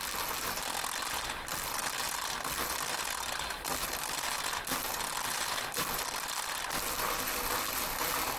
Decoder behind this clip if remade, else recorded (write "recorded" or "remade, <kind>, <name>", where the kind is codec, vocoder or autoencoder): recorded